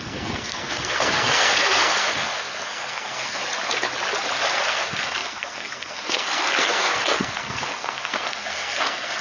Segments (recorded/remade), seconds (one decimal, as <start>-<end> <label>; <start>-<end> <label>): 0.0-3.4 remade; 3.4-4.5 recorded; 4.5-9.2 remade

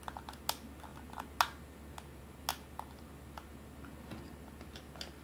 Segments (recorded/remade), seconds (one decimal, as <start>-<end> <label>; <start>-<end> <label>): 0.0-5.2 recorded

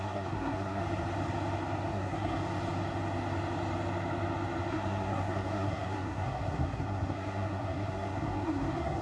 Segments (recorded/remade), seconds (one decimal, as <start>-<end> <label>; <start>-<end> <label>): 0.0-0.8 remade; 0.8-1.9 recorded; 1.9-2.4 remade; 2.4-4.7 recorded; 4.7-9.0 remade

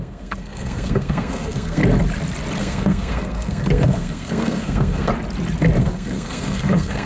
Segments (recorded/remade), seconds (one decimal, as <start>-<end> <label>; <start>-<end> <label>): 0.0-1.8 remade; 1.8-2.6 recorded; 2.6-5.1 remade; 5.1-5.8 recorded; 5.8-7.1 remade

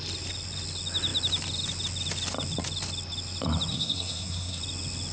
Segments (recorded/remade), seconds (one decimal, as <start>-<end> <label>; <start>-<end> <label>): 0.0-3.7 recorded; 3.7-4.6 remade; 4.6-5.1 recorded

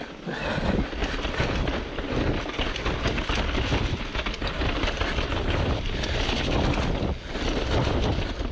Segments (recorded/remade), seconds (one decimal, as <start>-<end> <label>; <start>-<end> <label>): 0.0-8.5 recorded

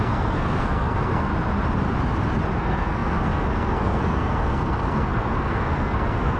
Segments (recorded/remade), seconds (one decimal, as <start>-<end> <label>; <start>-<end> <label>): 0.0-1.3 remade; 1.3-2.6 recorded; 2.6-6.4 remade